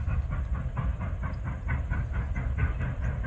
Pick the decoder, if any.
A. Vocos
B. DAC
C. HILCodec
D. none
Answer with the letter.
D